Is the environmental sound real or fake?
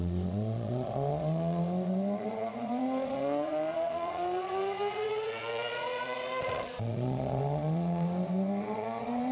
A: fake